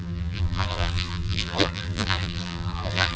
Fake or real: fake